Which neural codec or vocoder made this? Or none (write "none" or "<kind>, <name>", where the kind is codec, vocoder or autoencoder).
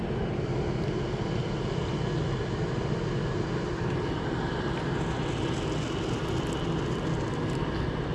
none